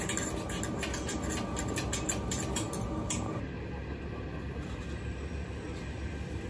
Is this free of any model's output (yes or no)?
yes